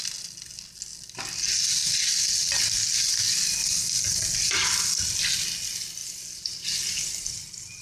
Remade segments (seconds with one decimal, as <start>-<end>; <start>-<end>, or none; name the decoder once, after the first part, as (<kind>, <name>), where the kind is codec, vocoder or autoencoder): none